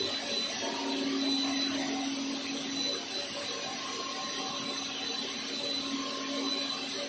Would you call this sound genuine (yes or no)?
yes